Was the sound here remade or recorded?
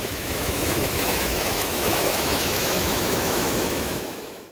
remade